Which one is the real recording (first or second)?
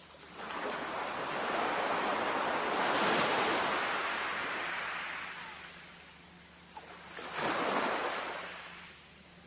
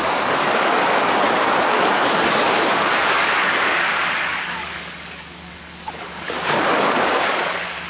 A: first